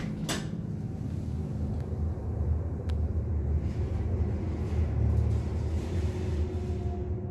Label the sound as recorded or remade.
recorded